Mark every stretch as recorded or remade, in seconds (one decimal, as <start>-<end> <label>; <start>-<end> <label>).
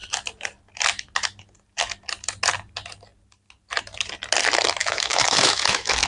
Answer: 0.0-4.8 recorded; 4.8-6.1 remade